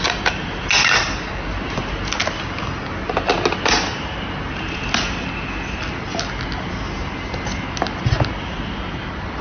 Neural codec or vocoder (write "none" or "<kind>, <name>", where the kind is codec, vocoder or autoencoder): none